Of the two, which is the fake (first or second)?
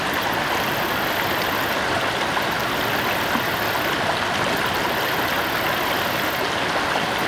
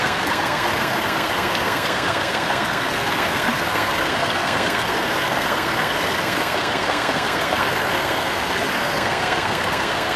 second